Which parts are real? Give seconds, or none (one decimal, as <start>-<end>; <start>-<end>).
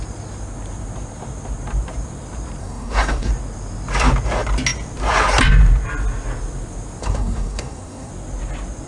0.0-2.6; 3.3-7.0; 8.1-8.9